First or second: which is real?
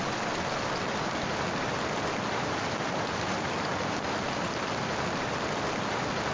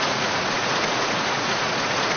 first